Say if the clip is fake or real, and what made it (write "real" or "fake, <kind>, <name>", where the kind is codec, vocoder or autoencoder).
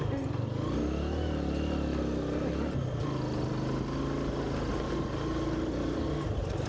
real